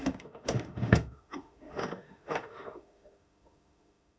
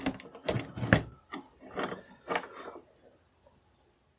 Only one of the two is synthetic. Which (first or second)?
first